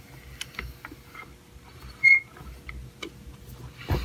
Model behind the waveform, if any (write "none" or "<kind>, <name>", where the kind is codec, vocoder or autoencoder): none